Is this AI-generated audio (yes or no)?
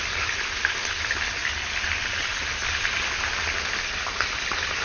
no